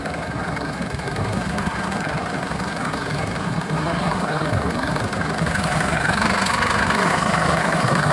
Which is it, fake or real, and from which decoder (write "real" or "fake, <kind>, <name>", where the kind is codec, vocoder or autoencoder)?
fake, codec, SNAC